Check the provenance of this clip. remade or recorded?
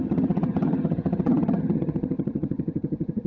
remade